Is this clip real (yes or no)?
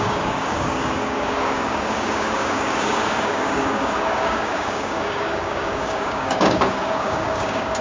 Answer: no